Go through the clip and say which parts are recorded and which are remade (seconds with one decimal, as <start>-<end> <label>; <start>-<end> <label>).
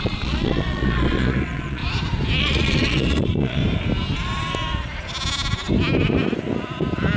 0.0-1.8 remade; 1.8-2.4 recorded; 2.4-3.6 remade; 3.6-7.2 recorded